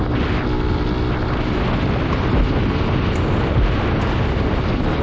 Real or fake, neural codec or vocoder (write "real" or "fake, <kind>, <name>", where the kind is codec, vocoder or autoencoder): real